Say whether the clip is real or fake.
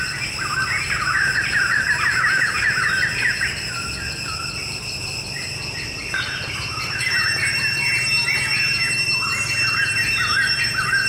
fake